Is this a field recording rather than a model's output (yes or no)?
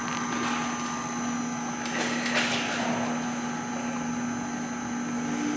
yes